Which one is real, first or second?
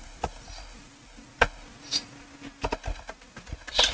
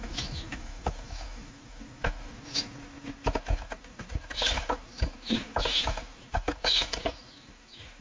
first